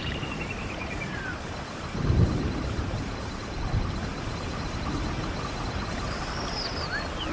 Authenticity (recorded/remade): remade